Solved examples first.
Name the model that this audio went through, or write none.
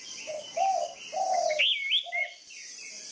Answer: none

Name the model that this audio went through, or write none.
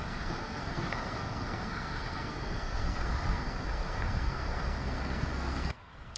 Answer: codec, SNAC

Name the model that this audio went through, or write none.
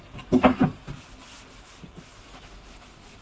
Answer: none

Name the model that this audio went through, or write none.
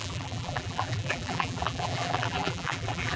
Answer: vocoder, BigVGAN v2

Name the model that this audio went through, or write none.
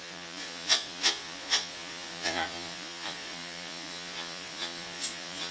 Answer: vocoder, Vocos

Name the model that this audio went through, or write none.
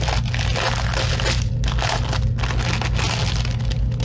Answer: none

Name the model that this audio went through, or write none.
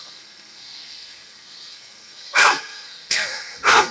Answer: codec, SNAC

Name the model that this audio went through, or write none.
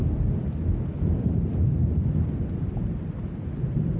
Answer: none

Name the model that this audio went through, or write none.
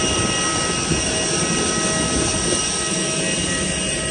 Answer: none